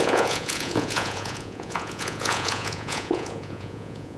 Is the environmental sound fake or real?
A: fake